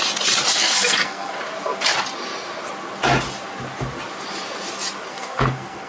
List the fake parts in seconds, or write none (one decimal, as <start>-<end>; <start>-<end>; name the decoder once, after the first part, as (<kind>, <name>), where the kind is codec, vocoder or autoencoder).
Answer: 0.5-1.4 (codec, SNAC); 5.1-5.9

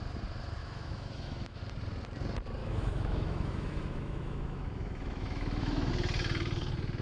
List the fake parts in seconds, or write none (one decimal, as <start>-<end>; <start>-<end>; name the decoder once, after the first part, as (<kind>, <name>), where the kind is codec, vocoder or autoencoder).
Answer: 0.6-1.6 (autoencoder, DAC-VAE); 2.6-5.9

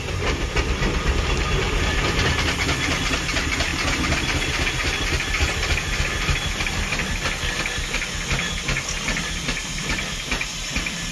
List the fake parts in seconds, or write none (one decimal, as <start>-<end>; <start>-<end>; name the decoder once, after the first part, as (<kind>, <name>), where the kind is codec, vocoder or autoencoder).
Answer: none

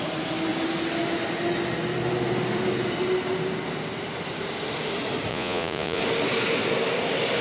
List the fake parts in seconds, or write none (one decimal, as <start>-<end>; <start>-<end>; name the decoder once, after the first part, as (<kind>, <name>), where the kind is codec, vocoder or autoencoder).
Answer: 5.3-6.0 (vocoder, Vocos)

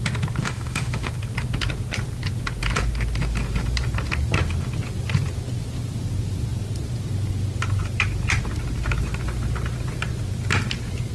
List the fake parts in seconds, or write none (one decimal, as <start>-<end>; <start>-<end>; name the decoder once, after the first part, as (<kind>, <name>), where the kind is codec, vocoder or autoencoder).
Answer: 0.4-1.1 (autoencoder, DAC-VAE)

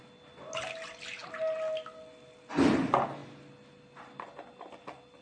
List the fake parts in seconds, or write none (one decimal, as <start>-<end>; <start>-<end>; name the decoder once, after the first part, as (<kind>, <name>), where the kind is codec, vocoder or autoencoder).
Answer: none